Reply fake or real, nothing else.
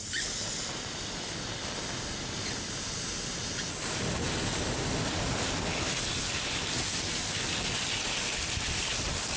real